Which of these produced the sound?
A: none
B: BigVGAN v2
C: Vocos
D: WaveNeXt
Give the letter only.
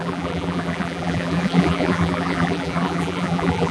B